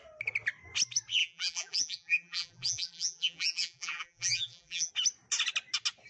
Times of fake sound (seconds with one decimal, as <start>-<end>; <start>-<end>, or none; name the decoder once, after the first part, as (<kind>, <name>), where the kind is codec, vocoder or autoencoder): 1.2-4.9 (vocoder, BigVGAN v2)